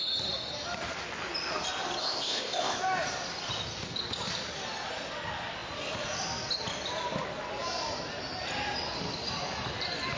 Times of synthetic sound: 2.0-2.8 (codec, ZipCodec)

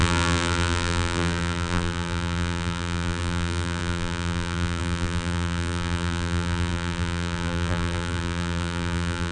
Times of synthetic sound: 0.0-9.3 (vocoder, BigVGAN v2)

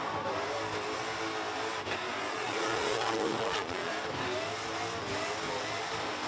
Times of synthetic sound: 2.3-3.9 (vocoder, Vocos)

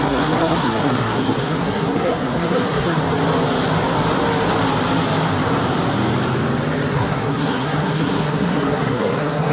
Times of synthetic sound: 0.0-3.0 (codec, SNAC); 6.9-9.5

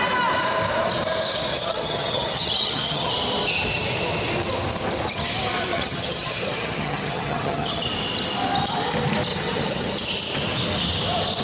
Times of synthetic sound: 1.5-3.1 (vocoder, HiFi-GAN); 5.7-7.8; 9.3-9.9